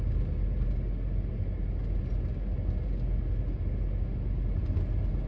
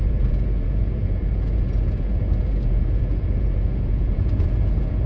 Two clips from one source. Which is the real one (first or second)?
first